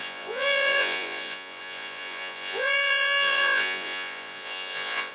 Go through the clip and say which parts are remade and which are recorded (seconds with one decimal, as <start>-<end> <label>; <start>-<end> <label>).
0.0-5.1 remade